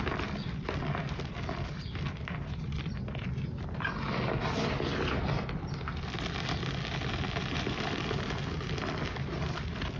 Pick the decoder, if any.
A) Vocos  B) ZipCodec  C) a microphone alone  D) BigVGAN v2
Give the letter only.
C